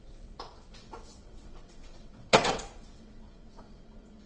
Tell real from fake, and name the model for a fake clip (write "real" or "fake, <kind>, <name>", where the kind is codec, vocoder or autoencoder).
fake, vocoder, WaveNeXt